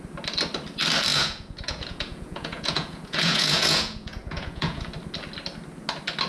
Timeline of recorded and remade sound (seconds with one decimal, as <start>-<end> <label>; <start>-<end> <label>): 0.0-1.1 recorded; 1.1-4.9 remade; 4.9-6.3 recorded